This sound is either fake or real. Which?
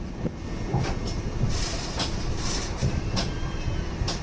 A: real